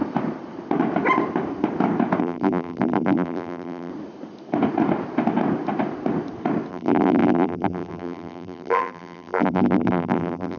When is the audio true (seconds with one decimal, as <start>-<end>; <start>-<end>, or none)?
0.0-2.2; 3.9-6.7